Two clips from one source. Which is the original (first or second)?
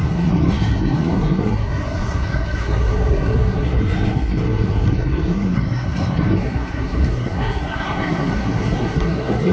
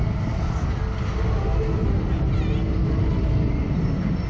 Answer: second